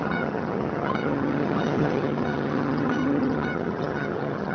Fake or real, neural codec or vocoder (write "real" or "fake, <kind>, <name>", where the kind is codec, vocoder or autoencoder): fake, vocoder, HiFi-GAN